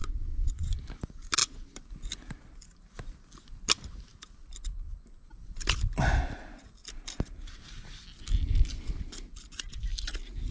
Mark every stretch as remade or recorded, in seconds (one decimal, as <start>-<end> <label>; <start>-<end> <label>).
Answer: 0.0-0.7 remade; 0.7-10.5 recorded

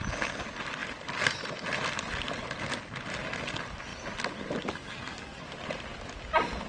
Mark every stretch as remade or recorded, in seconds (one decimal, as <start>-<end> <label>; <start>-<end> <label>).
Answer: 0.0-6.7 recorded

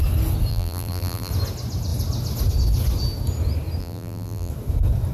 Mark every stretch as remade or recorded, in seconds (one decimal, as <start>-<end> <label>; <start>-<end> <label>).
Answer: 0.0-0.5 recorded; 0.5-1.3 remade; 1.3-3.8 recorded; 3.8-4.5 remade; 4.5-5.1 recorded

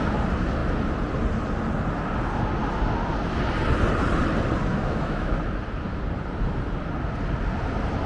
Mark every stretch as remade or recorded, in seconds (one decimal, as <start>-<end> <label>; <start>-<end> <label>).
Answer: 0.0-4.7 recorded; 4.7-5.3 remade; 5.3-8.1 recorded

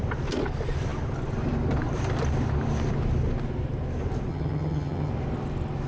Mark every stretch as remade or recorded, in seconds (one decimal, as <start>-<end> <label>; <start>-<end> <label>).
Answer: 0.0-4.3 recorded; 4.3-5.1 remade; 5.1-5.9 recorded

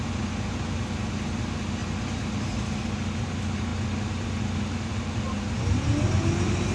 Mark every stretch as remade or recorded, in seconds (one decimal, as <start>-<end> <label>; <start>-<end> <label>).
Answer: 0.0-6.7 recorded

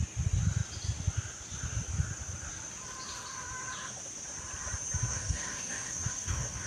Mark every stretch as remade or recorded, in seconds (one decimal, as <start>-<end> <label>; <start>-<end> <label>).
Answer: 0.0-5.1 recorded; 5.1-6.7 remade

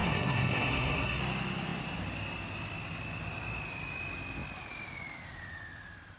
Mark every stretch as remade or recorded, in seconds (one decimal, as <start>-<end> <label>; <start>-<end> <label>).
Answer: 0.0-1.2 remade; 1.2-6.2 recorded